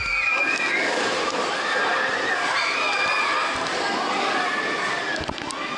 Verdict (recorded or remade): recorded